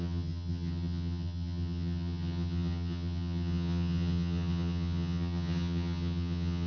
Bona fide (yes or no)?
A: no